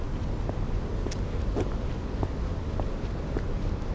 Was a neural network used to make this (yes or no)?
no